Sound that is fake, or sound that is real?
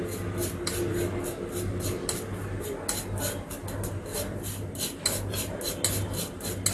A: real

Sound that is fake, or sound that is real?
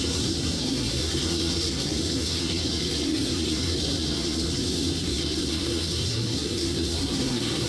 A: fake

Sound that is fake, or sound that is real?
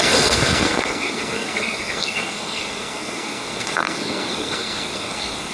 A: fake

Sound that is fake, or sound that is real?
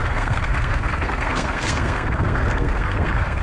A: fake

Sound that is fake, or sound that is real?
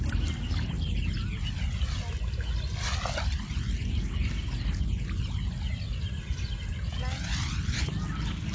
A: real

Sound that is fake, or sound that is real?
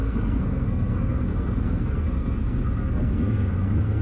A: fake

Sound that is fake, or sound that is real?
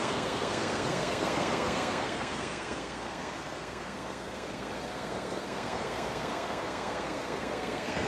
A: fake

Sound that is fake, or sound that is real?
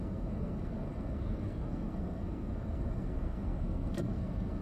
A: fake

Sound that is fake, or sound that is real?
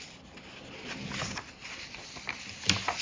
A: real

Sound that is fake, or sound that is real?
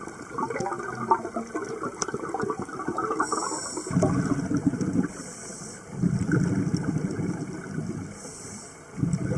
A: real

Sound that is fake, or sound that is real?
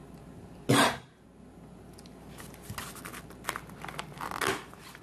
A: real